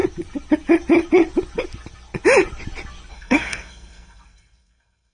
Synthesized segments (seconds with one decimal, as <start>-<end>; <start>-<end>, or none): 3.1-5.1